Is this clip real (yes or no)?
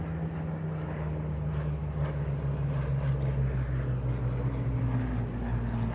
yes